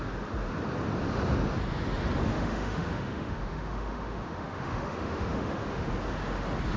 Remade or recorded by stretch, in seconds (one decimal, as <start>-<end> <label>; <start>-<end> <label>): 0.0-2.3 recorded; 2.3-5.9 remade; 5.9-6.8 recorded